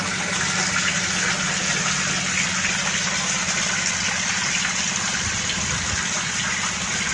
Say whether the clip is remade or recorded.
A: recorded